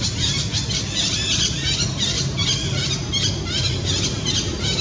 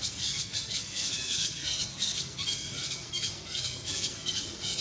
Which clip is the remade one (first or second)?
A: second